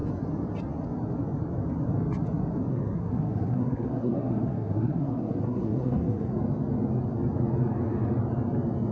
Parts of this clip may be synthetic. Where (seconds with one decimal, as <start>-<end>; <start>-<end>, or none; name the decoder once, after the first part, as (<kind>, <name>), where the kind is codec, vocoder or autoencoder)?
2.7-6.3 (codec, SNAC)